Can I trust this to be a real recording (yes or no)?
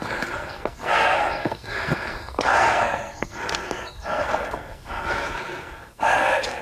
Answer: no